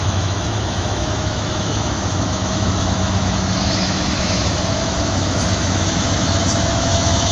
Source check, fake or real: fake